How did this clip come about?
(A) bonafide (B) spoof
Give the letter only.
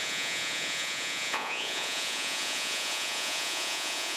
B